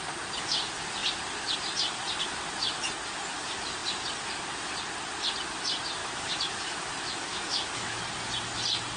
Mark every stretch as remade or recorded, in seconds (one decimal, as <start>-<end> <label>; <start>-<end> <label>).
0.0-6.0 recorded; 6.0-8.0 remade; 8.0-9.0 recorded